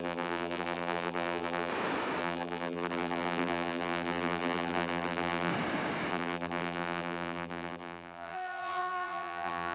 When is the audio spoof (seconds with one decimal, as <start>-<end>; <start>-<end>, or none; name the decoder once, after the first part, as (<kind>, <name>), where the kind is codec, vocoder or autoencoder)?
0.0-1.7 (vocoder, BigVGAN v2); 2.2-5.5; 6.1-9.7